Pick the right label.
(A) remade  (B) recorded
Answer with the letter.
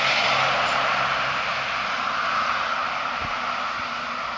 B